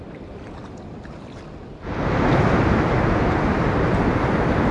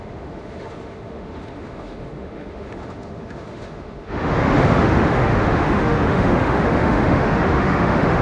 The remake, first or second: second